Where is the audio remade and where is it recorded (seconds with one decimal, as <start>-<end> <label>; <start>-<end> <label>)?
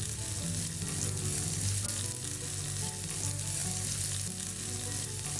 0.0-5.4 recorded